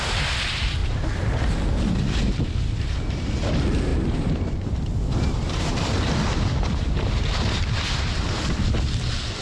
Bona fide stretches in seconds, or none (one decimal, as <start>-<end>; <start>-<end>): 0.8-3.1